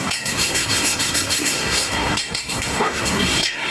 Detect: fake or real fake